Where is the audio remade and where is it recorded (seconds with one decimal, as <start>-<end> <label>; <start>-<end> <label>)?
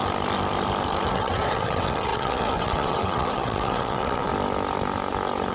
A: 0.0-1.1 recorded; 1.1-4.3 remade; 4.3-5.5 recorded